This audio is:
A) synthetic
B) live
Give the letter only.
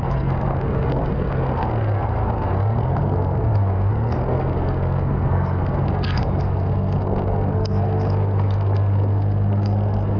A